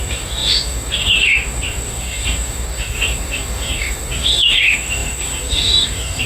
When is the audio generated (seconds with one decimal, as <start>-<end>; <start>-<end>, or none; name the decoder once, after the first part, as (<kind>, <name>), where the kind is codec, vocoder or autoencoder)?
0.0-6.3 (codec, DAC)